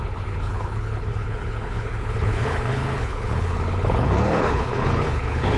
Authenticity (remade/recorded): remade